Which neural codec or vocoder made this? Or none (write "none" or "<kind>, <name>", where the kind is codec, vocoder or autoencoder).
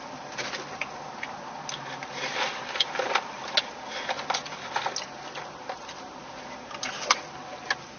none